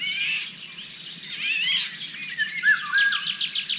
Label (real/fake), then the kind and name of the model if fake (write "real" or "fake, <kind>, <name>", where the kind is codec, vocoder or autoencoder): real